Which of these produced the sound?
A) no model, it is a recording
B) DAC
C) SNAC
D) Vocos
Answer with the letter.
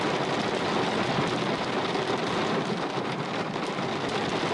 A